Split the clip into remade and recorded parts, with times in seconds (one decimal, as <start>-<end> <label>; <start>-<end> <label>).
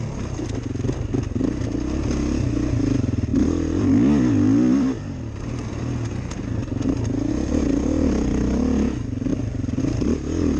0.0-3.3 recorded; 3.3-5.7 remade; 5.7-9.3 recorded; 9.3-9.8 remade; 9.8-10.6 recorded